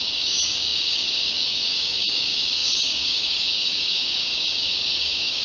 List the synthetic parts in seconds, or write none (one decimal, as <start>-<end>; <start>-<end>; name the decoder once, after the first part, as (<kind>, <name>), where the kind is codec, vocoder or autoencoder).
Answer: 0.0-5.4 (codec, DAC)